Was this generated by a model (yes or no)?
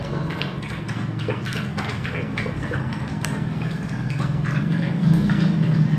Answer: yes